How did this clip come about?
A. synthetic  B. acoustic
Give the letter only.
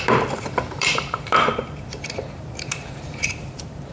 A